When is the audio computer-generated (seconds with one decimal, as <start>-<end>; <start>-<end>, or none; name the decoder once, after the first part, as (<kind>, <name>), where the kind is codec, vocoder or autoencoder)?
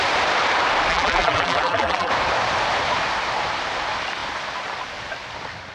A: 0.9-2.1 (vocoder, BigVGAN v2)